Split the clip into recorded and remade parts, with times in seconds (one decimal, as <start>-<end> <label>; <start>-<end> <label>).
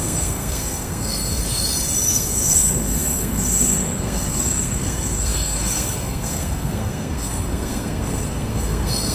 0.0-1.4 remade; 1.4-2.1 recorded; 2.1-9.1 remade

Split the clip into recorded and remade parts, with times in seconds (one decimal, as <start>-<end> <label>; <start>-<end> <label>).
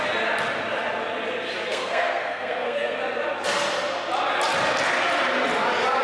0.0-1.7 recorded; 1.7-3.0 remade; 3.0-6.0 recorded